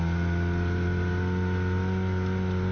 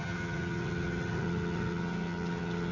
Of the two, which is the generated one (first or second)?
second